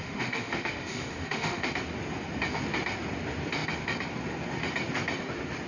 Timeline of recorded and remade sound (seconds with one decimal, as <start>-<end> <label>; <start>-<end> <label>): 0.0-1.7 remade; 1.7-5.7 recorded